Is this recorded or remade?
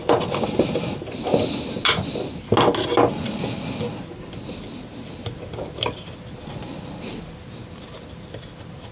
recorded